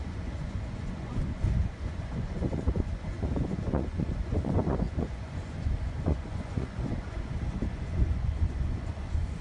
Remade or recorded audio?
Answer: remade